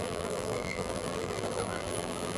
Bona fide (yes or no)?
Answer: no